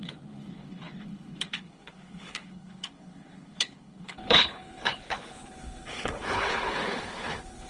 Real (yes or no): no